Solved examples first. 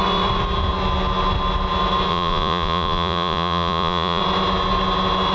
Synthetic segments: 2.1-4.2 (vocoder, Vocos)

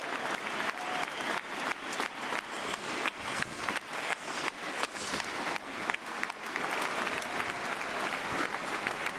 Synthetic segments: 2.6-6.6 (codec, SNAC); 8.2-9.2